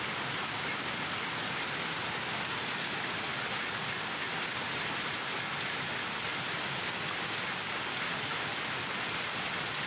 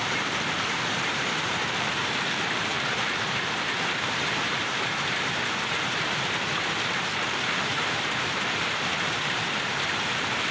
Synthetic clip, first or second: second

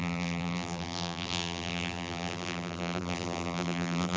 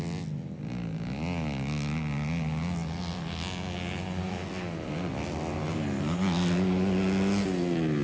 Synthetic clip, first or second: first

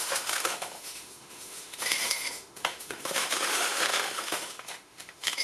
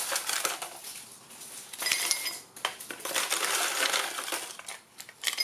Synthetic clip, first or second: first